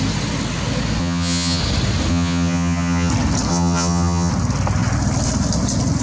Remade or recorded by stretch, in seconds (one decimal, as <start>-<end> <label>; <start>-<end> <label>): 0.0-1.0 recorded; 1.0-1.6 remade; 1.6-2.1 recorded; 2.1-3.1 remade; 3.1-3.5 recorded; 3.5-4.3 remade; 4.3-6.0 recorded